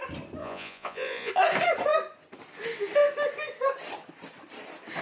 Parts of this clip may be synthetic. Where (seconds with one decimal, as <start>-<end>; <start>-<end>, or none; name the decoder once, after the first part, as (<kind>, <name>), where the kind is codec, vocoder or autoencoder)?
0.4-1.3 (vocoder, Vocos)